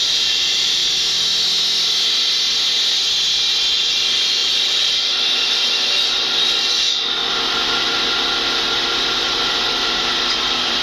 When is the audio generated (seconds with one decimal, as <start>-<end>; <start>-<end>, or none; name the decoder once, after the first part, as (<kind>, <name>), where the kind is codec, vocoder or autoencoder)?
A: 0.0-0.8 (vocoder, BigVGAN v2); 3.7-7.2; 9.2-10.8